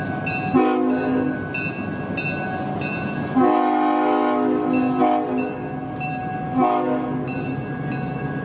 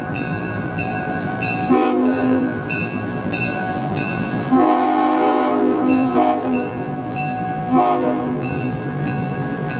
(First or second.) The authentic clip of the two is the first